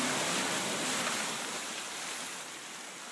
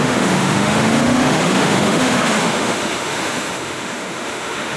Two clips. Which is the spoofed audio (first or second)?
second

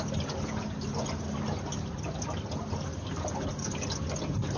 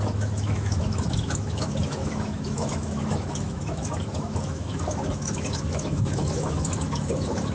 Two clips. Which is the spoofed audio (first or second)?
second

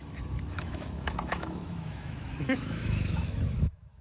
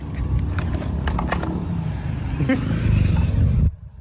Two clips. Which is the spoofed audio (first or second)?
first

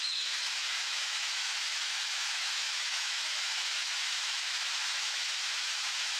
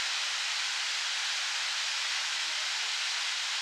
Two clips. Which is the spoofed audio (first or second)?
first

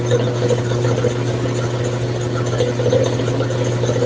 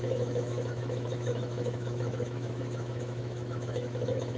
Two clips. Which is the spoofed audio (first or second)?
second